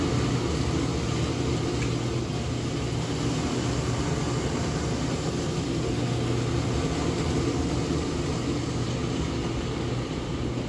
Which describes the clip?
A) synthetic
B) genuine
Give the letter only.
B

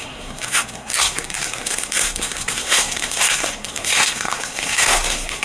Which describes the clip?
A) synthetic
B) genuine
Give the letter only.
A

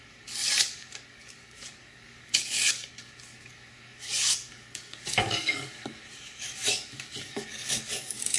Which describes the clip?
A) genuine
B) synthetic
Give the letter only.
B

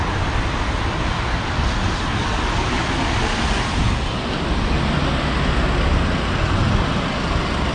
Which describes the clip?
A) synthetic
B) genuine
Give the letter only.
B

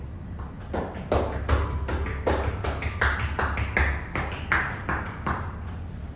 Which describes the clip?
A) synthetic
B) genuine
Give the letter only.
B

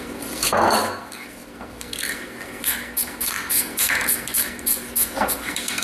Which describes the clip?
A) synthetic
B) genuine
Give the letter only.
A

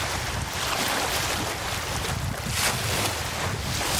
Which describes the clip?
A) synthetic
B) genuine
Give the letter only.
B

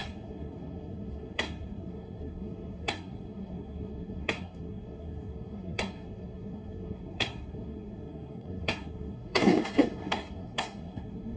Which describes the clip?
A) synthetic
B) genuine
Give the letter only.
A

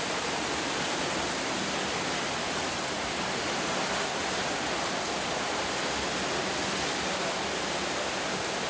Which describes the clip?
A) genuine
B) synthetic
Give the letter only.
A